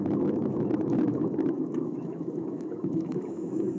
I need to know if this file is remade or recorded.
remade